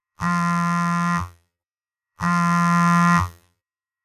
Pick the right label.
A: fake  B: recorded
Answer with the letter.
A